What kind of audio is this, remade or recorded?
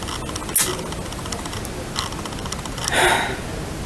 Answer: recorded